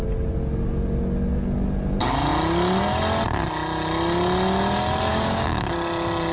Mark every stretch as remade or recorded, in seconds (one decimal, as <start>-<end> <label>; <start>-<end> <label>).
0.0-5.1 recorded; 5.1-5.7 remade; 5.7-6.3 recorded